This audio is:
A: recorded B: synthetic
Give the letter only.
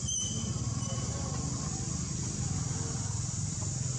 A